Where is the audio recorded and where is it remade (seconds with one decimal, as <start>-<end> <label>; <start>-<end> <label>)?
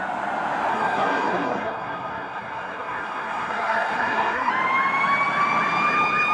0.0-0.7 recorded; 0.7-4.5 remade; 4.5-6.3 recorded